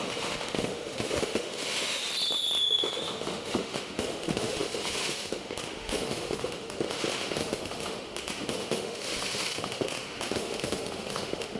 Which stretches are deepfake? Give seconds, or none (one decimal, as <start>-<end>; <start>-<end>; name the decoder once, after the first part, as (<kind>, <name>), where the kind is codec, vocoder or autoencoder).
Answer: 0.0-2.0 (autoencoder, DAC-VAE); 2.6-11.6